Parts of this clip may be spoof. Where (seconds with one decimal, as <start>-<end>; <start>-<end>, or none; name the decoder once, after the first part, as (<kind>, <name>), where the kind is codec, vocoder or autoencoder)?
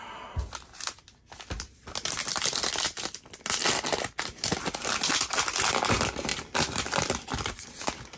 none